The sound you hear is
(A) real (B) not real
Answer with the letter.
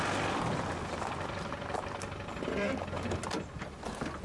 A